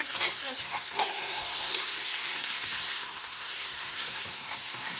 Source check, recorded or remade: remade